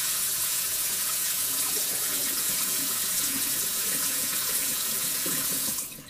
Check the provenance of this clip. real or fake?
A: fake